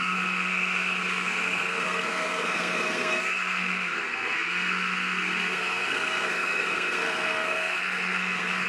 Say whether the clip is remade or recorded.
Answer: remade